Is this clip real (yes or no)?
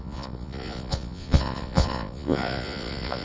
no